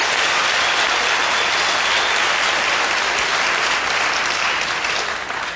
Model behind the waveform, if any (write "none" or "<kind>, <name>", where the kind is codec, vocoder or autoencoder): none